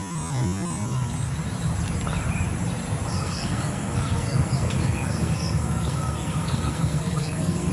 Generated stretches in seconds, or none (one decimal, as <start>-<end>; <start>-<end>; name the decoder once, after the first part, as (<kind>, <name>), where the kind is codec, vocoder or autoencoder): 3.1-7.7 (codec, SNAC)